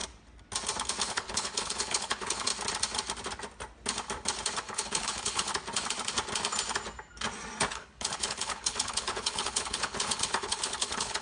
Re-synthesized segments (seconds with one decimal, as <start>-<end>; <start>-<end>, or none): 1.0-2.5; 4.6-5.5; 7.7-11.2